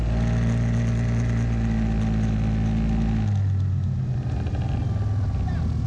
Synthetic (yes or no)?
no